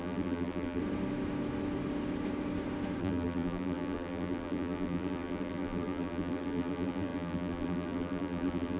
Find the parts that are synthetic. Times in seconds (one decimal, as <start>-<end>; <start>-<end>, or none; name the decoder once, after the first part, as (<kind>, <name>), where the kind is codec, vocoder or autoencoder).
0.0-0.8 (vocoder, BigVGAN v2); 3.0-8.8